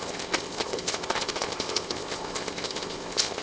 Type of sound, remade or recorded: remade